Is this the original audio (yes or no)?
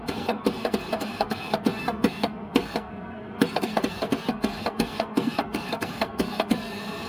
no